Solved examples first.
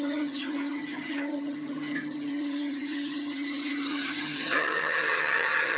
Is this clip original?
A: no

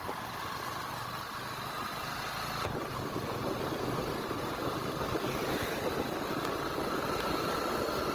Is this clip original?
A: yes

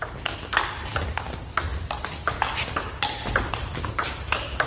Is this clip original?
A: yes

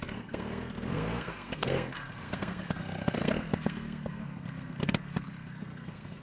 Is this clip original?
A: no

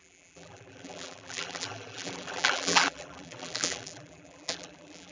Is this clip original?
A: no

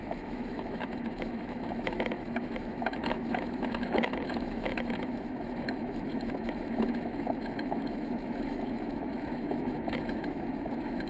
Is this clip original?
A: no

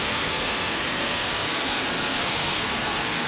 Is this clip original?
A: no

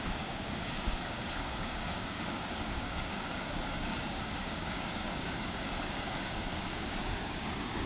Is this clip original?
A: no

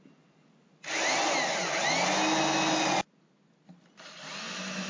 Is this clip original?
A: yes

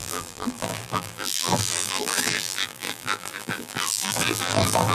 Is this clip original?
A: no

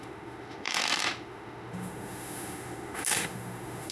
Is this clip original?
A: no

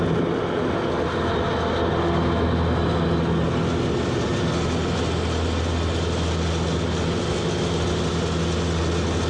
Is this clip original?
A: yes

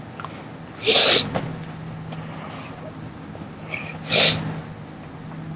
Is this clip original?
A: yes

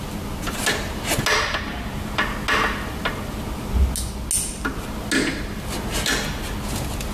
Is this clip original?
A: yes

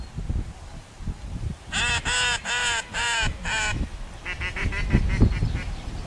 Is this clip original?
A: yes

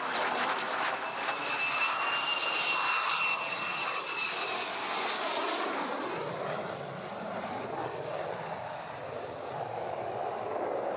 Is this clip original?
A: yes